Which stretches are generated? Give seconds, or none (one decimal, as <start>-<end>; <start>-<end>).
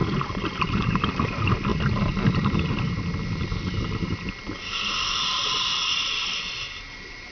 none